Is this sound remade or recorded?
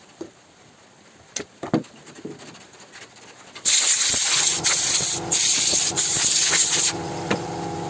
recorded